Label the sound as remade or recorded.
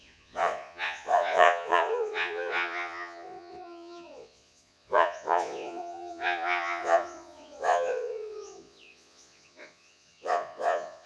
remade